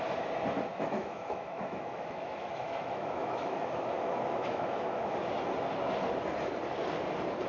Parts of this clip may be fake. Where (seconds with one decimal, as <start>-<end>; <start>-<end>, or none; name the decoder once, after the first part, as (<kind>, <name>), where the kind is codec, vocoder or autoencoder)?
0.7-5.2 (autoencoder, DAC-VAE)